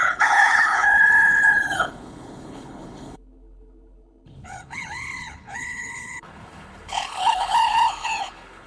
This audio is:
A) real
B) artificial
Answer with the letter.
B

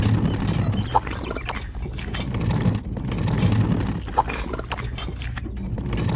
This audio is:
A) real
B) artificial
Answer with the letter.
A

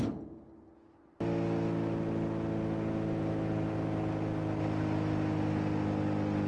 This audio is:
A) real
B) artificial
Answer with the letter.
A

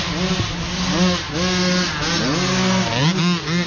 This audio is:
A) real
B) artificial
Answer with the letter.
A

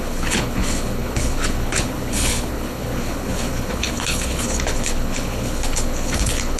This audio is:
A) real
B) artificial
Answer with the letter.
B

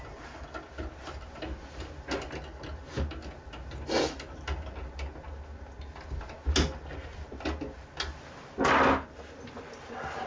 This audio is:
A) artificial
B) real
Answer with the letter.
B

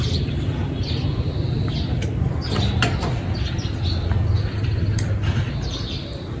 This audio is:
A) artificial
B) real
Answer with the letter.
B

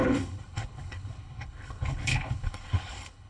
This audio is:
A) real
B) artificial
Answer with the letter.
B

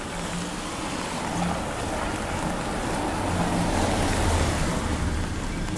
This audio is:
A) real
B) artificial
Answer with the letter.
A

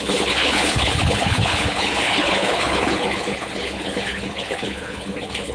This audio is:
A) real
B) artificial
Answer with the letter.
B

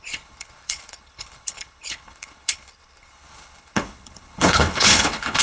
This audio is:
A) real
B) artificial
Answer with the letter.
B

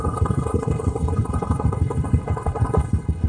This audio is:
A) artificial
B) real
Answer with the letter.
A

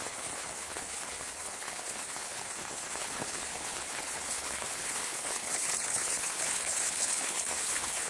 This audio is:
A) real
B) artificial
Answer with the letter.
B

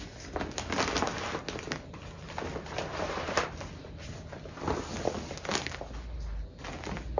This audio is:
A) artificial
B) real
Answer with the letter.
B